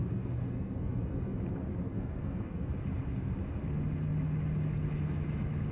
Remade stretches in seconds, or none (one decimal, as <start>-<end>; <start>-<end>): 0.0-1.4; 1.9-2.7